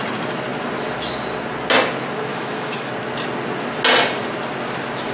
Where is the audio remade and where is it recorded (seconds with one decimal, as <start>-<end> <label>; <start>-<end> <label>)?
0.0-2.3 recorded; 2.3-2.9 remade; 2.9-5.1 recorded